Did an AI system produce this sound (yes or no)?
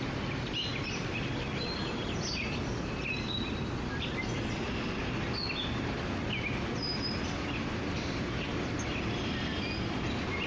no